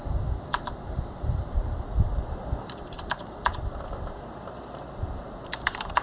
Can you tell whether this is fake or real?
fake